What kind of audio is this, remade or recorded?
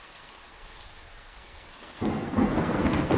remade